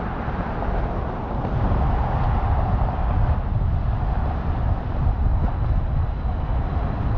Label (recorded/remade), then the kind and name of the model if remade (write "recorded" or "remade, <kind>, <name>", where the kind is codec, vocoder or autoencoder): recorded